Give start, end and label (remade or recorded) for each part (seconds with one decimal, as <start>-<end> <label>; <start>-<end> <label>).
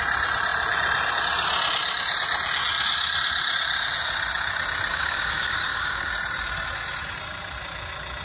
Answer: 0.0-4.9 recorded; 4.9-6.1 remade; 6.1-8.2 recorded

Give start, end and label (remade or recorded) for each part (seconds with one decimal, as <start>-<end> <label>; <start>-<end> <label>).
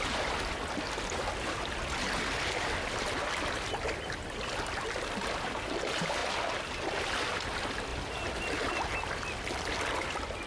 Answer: 0.0-10.5 recorded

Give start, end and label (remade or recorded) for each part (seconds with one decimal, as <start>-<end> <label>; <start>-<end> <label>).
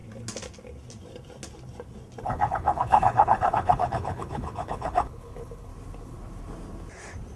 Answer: 0.0-2.2 recorded; 2.2-5.7 remade; 5.7-7.4 recorded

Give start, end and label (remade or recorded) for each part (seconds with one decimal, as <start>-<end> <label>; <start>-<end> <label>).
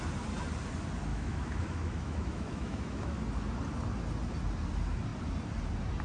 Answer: 0.0-1.1 recorded; 1.1-3.2 remade; 3.2-6.0 recorded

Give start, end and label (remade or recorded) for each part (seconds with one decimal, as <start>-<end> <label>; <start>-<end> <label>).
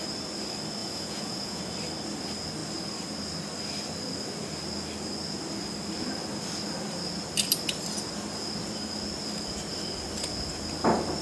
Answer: 0.0-0.8 recorded; 0.8-1.6 remade; 1.6-11.2 recorded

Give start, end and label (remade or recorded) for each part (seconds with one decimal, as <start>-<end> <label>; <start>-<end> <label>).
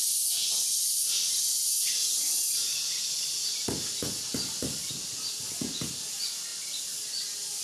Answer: 0.0-7.6 recorded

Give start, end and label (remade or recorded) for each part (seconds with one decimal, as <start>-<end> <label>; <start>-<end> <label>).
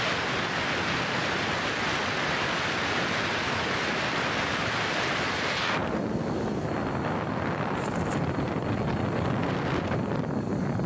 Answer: 0.0-10.9 recorded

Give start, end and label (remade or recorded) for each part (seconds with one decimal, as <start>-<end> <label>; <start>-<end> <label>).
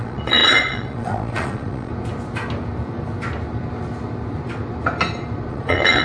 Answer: 0.0-1.9 remade; 1.9-5.5 recorded; 5.5-6.0 remade